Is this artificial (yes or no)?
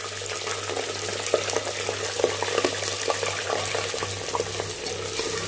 no